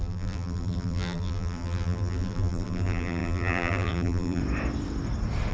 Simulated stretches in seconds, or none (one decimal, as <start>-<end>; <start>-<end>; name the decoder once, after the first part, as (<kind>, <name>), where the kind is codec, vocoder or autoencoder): 0.0-4.4 (vocoder, BigVGAN v2)